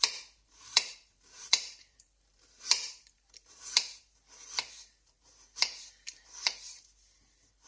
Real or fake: fake